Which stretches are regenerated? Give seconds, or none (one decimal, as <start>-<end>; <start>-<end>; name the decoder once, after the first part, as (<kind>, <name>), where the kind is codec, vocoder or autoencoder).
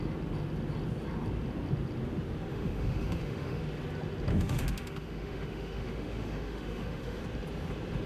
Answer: 2.5-3.6 (autoencoder, DAC-VAE); 4.3-7.2